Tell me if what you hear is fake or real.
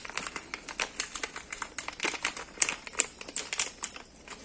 real